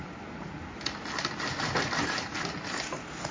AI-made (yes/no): no